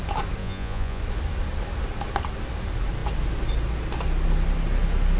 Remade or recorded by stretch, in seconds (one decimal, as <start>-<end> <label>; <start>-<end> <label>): 0.0-0.4 recorded; 0.4-1.0 remade; 1.0-5.2 recorded